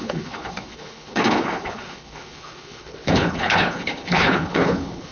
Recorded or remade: remade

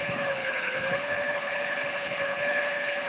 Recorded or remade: remade